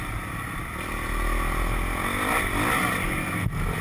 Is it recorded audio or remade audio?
recorded